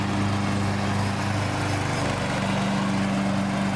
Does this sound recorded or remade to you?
recorded